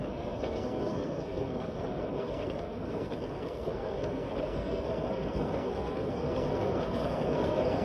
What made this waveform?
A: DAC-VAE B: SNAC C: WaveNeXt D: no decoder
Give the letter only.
B